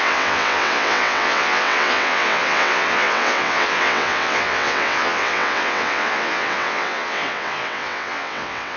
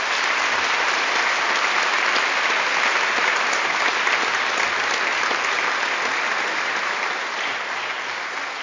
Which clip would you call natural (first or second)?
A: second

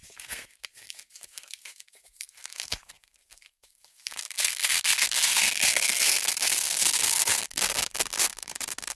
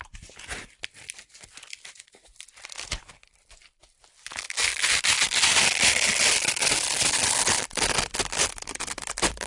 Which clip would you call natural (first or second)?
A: second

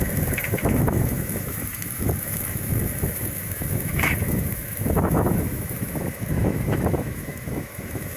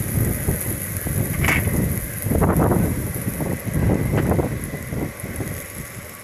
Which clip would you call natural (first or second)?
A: second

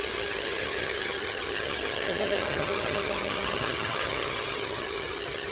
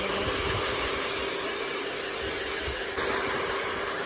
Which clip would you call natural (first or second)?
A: second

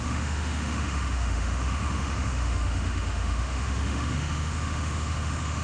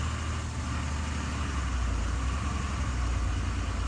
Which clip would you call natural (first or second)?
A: second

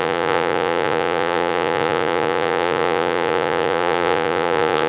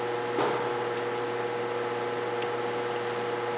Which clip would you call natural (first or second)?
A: second